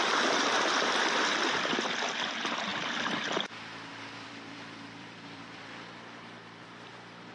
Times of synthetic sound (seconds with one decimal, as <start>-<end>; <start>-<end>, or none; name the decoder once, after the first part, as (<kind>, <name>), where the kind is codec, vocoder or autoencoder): 2.7-7.3 (vocoder, BigVGAN v2)